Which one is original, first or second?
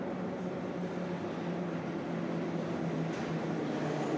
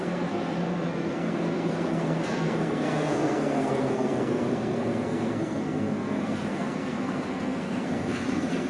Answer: first